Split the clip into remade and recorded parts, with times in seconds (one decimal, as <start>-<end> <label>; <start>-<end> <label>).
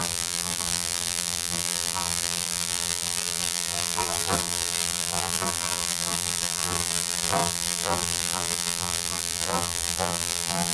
0.0-10.7 remade